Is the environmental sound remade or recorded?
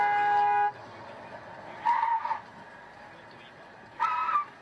recorded